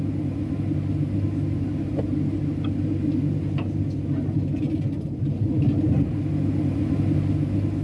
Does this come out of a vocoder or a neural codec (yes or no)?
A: no